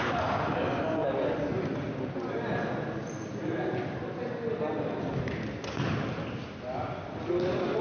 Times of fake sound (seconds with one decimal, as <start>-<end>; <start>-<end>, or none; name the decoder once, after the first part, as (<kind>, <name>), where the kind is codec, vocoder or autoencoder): none